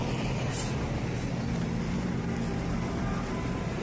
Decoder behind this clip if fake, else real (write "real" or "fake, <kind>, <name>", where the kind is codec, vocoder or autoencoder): fake, vocoder, BigVGAN v2